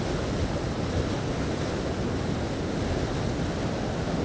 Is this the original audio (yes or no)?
yes